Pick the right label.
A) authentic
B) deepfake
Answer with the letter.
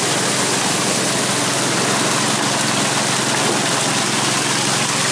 A